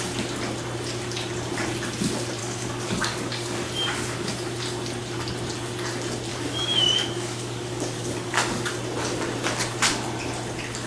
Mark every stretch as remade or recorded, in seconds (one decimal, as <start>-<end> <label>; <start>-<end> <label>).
0.0-2.4 recorded; 2.4-4.3 remade; 4.3-6.3 recorded; 6.3-8.7 remade; 8.7-10.9 recorded